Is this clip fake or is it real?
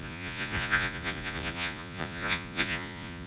fake